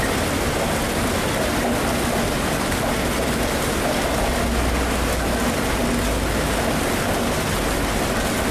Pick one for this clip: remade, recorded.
recorded